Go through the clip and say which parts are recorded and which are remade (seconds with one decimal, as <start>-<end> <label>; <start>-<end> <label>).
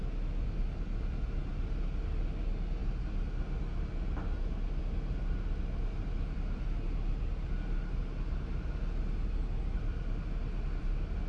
0.0-11.3 recorded